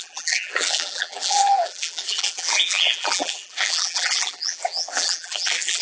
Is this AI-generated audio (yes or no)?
yes